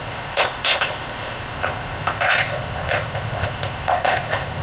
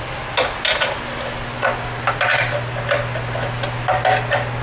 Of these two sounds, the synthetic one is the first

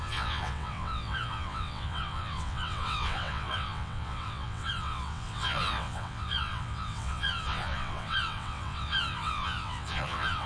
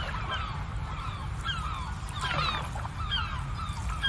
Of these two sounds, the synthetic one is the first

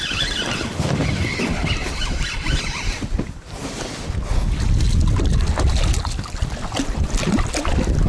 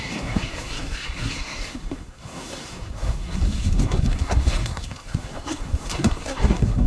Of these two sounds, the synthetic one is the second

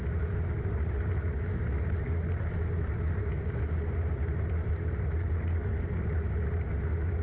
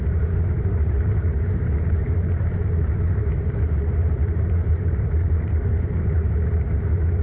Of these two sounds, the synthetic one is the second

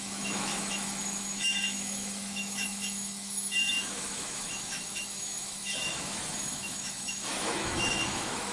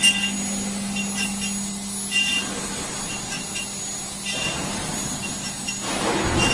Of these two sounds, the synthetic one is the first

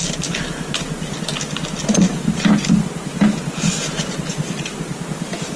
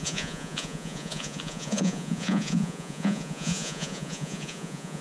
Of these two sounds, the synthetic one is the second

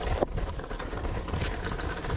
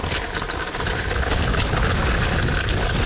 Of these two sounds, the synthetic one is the first